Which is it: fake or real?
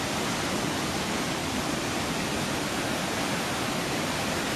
real